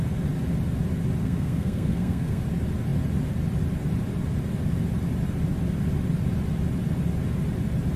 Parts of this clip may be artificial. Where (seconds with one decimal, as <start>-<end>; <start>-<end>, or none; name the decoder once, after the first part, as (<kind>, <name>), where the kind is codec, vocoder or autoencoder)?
1.2-2.4 (codec, SNAC)